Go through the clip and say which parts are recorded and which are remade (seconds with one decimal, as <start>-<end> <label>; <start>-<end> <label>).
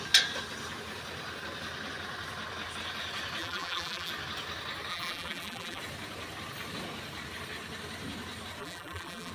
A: 0.0-3.4 recorded; 3.4-4.1 remade; 4.1-4.9 recorded; 4.9-5.8 remade; 5.8-8.6 recorded; 8.6-9.3 remade